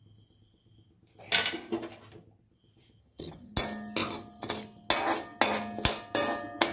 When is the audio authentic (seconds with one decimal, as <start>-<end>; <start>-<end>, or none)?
0.0-3.0; 3.5-6.7